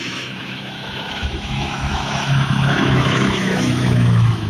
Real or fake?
fake